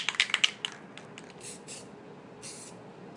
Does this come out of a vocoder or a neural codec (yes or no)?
no